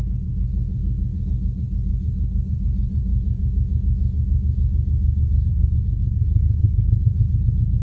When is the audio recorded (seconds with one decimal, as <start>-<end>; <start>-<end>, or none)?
0.5-1.2; 3.1-5.5